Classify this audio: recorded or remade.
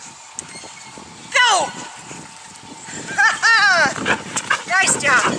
recorded